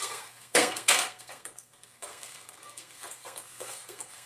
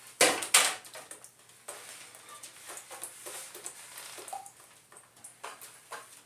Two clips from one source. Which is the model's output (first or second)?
first